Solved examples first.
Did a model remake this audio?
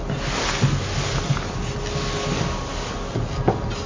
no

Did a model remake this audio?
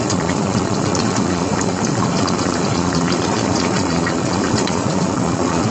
yes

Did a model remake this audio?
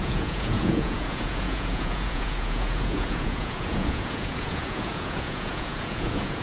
yes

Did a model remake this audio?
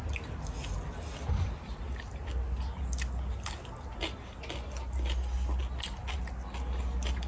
no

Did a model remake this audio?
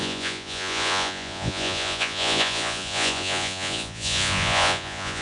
yes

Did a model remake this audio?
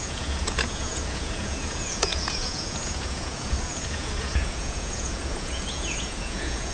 yes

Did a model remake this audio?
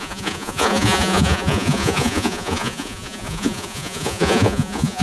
yes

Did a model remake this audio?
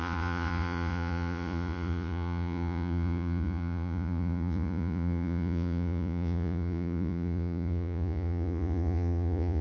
yes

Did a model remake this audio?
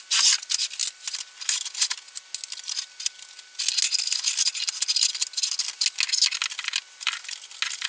no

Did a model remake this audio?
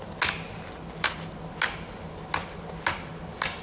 no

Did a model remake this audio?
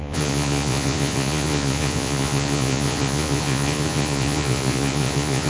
yes